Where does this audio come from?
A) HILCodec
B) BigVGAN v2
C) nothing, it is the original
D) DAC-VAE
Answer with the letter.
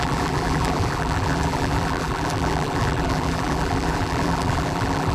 B